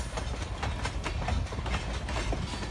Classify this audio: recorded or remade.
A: recorded